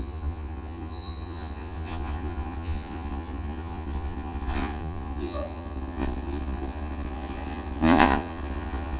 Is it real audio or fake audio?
fake